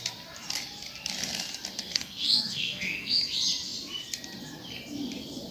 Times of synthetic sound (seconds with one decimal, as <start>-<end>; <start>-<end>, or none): 1.8-3.2